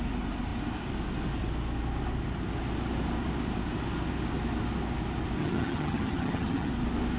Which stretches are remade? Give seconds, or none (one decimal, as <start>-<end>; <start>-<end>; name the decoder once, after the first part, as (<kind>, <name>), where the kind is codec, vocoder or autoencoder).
5.4-6.7 (vocoder, HiFi-GAN)